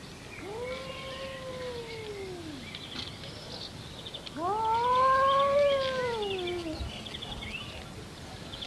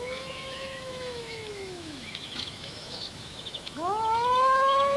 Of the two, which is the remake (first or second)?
second